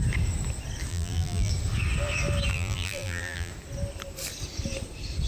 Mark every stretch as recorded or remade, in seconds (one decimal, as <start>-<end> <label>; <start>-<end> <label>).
0.0-0.9 recorded; 0.9-1.5 remade; 1.5-2.5 recorded; 2.5-3.5 remade; 3.5-5.3 recorded